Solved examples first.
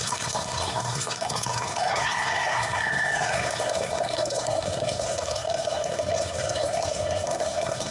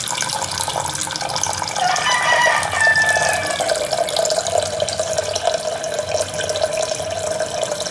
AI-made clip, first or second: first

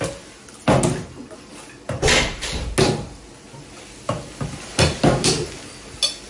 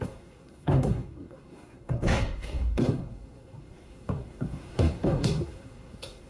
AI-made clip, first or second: second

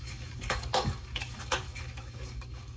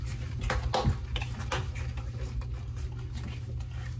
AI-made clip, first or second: first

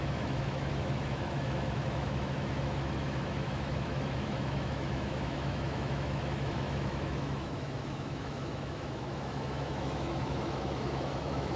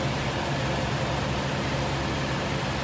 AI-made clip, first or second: first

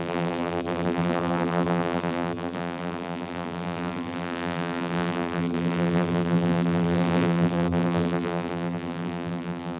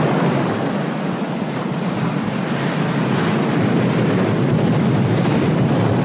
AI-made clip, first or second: first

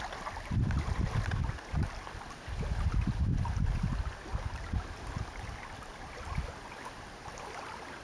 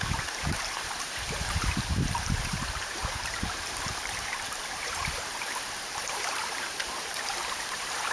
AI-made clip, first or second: second